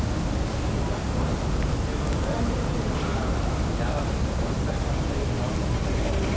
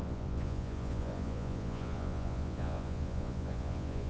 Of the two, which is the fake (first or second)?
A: second